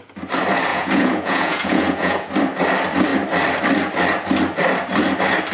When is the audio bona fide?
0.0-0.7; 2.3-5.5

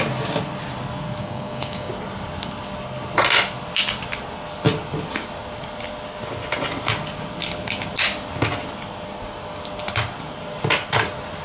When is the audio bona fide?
0.0-1.2; 1.9-11.4